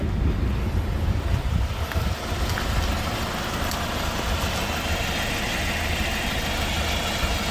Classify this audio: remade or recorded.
recorded